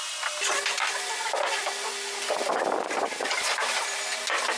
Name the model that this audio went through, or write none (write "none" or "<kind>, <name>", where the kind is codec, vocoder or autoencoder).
none